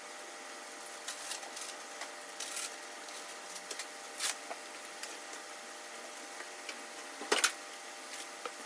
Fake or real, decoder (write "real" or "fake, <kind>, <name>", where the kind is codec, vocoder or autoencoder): real